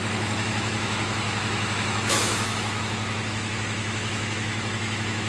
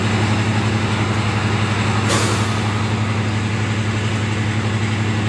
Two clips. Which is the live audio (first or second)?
second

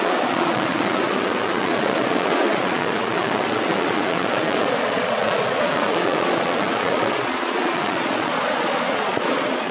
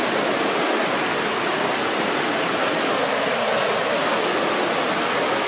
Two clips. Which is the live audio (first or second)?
second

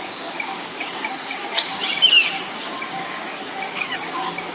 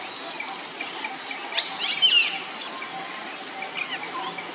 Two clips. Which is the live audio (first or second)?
second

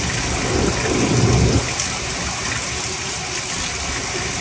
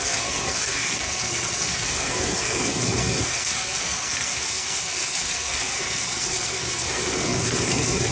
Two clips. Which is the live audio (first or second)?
first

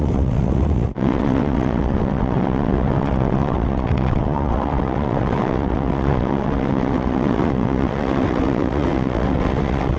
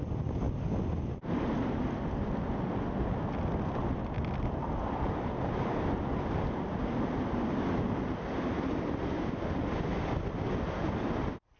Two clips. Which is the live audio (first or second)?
second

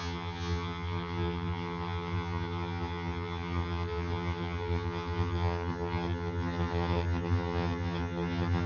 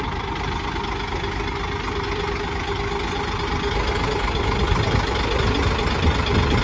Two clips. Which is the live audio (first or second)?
second